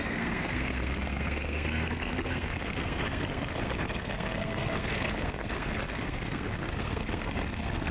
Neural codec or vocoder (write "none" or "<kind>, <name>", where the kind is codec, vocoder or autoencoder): codec, SNAC